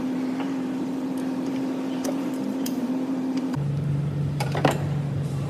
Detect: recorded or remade remade